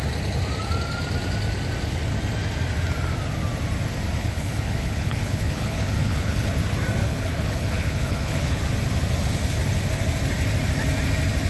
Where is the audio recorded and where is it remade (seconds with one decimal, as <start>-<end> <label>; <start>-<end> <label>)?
0.0-4.2 recorded; 4.2-6.5 remade; 6.5-7.0 recorded; 7.0-8.6 remade; 8.6-11.5 recorded